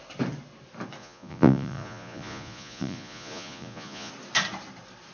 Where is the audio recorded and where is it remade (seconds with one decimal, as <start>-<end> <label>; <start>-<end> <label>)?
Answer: 0.0-1.0 recorded; 1.0-4.1 remade; 4.1-5.1 recorded